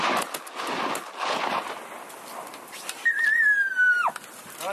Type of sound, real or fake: real